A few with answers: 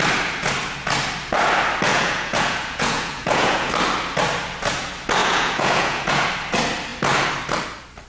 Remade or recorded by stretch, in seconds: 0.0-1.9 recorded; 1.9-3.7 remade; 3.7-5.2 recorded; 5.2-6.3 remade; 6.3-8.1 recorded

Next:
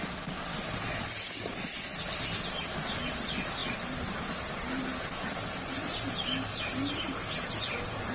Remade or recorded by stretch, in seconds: 0.0-8.1 recorded

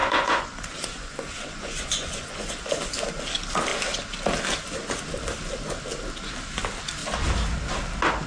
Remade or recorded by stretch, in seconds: 0.0-2.7 remade; 2.7-8.3 recorded